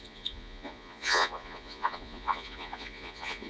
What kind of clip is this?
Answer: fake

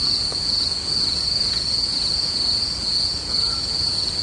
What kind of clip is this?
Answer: fake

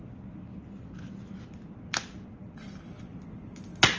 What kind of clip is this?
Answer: real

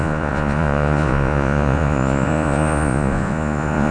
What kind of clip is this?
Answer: fake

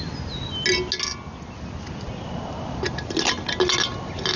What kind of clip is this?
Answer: real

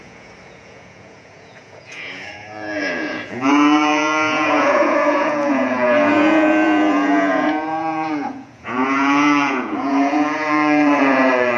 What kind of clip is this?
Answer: fake